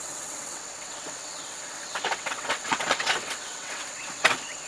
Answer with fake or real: fake